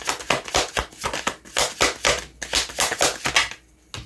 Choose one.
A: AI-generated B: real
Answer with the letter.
B